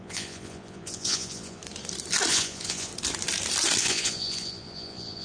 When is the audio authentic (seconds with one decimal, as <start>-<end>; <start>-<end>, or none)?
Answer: 1.6-2.3; 2.9-3.8